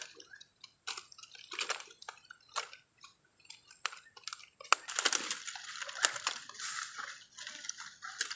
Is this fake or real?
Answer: real